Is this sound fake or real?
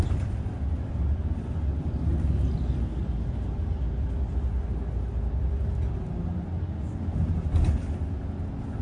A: real